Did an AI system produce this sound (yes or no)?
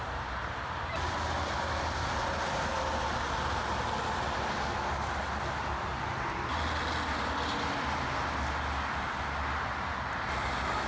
no